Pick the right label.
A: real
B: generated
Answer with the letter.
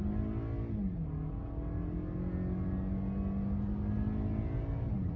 A